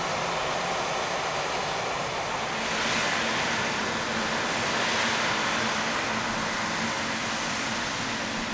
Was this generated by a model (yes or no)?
no